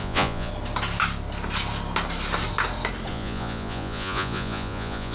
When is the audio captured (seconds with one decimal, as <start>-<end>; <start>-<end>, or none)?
0.5-3.1